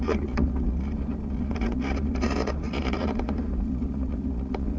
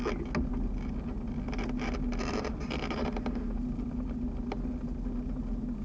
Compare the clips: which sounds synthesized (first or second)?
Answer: first